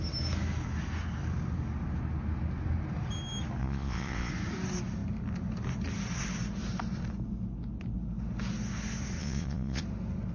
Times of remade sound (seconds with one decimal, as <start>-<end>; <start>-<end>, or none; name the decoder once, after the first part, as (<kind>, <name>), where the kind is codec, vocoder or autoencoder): 3.6-4.3 (vocoder, Vocos); 9.2-9.8